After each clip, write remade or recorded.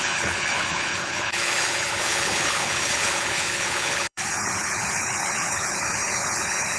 remade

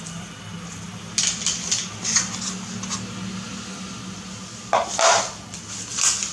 recorded